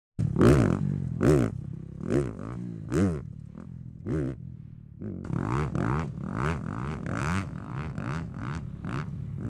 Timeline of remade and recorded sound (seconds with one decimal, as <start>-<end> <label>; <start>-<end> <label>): 0.0-7.2 recorded; 7.2-8.4 remade; 8.4-9.5 recorded